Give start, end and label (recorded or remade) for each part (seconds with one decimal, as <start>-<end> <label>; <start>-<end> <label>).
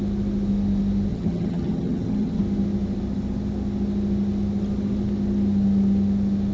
0.0-1.1 recorded; 1.1-2.4 remade; 2.4-6.5 recorded